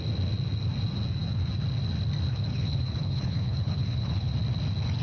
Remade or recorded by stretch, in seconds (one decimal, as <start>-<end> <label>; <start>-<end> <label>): 0.0-2.3 recorded; 2.3-4.3 remade; 4.3-5.0 recorded